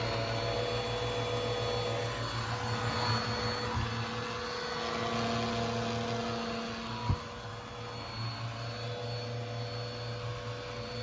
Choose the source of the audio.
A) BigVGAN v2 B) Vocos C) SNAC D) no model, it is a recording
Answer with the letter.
D